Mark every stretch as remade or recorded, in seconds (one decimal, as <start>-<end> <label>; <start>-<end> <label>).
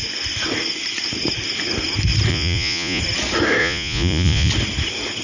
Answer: 0.0-2.3 recorded; 2.3-3.0 remade; 3.0-3.6 recorded; 3.6-4.5 remade; 4.5-5.2 recorded